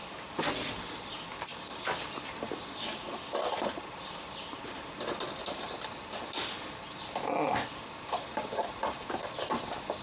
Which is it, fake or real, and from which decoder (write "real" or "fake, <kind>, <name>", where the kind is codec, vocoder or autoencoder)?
real